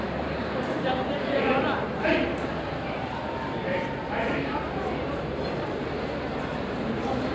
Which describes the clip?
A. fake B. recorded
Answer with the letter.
A